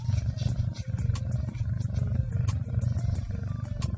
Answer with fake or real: real